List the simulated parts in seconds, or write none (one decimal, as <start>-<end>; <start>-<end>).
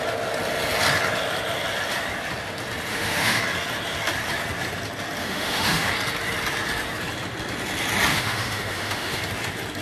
2.9-3.4; 5.2-5.9; 8.1-9.2